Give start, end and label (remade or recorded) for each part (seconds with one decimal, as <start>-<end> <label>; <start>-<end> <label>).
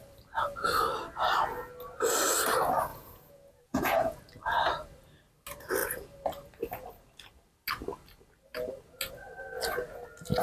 0.0-2.9 recorded; 2.9-4.2 remade; 4.2-10.4 recorded